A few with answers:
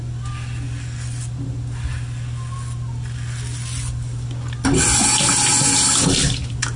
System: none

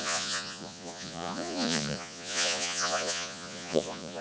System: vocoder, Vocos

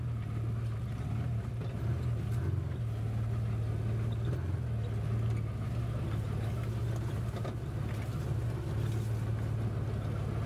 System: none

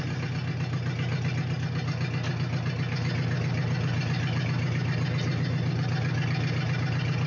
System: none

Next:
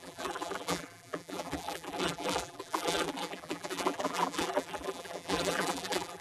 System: vocoder, BigVGAN v2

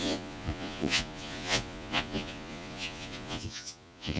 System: vocoder, Vocos